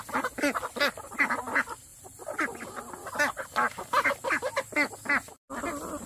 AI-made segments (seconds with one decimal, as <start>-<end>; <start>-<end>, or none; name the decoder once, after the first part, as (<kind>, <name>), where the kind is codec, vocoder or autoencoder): none